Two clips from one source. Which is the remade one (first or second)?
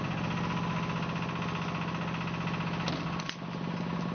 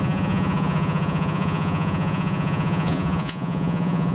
second